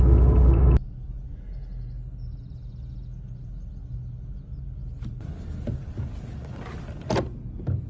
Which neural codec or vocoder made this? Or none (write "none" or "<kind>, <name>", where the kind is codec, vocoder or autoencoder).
none